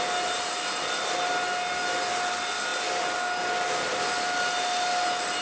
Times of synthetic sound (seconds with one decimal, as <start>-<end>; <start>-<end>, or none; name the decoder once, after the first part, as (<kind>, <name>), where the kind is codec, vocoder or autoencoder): none